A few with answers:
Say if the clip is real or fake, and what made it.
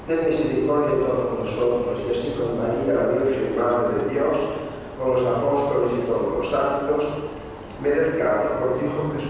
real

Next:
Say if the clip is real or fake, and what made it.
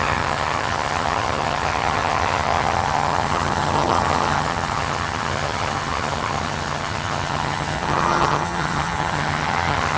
fake, vocoder, HiFi-GAN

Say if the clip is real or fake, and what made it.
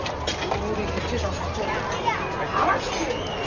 real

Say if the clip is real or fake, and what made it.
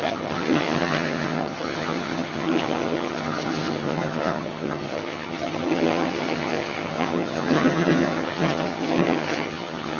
fake, vocoder, HiFi-GAN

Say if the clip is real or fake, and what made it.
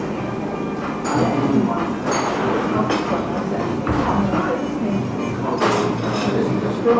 real